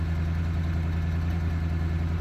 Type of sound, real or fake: real